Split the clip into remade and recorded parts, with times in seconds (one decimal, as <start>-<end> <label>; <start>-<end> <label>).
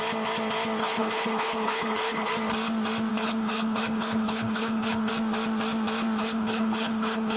0.0-0.8 recorded; 0.8-2.3 remade; 2.3-3.1 recorded; 3.1-5.1 remade; 5.1-6.2 recorded; 6.2-7.4 remade